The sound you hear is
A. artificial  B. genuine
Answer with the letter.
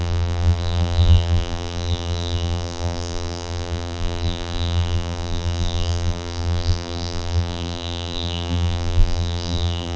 A